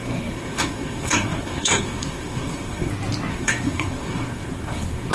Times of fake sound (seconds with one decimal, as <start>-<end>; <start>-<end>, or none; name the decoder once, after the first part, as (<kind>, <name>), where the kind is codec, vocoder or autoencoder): 0.0-2.9 (codec, SNAC); 3.3-5.1